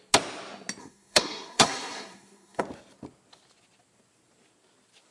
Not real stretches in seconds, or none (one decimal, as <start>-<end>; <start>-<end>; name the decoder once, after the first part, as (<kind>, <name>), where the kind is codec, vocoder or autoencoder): 0.8-2.6 (codec, SNAC)

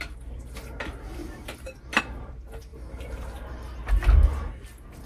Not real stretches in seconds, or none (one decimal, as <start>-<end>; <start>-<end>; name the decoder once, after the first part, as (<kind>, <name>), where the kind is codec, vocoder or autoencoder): 1.2-2.0 (vocoder, BigVGAN v2); 2.7-3.8